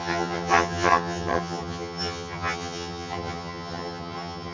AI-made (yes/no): yes